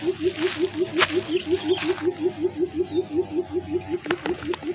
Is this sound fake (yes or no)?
no